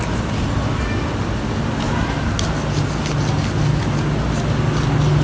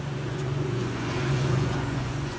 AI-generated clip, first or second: second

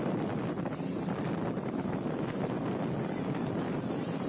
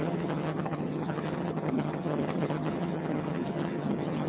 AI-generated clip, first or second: second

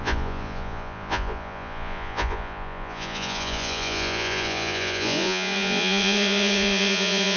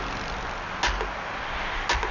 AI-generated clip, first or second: first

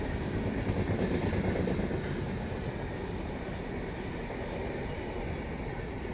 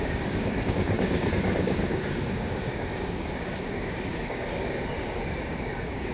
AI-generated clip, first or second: second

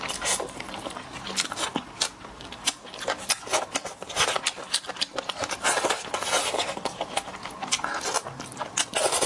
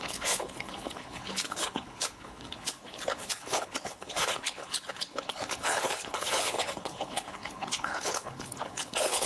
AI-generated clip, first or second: second